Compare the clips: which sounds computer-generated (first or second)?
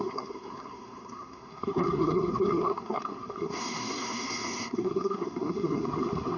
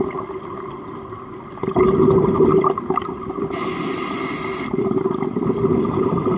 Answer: first